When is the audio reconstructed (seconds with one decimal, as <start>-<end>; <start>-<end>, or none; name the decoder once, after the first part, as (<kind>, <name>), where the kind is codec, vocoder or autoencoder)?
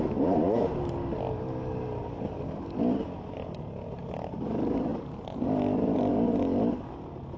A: none